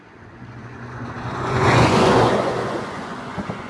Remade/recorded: remade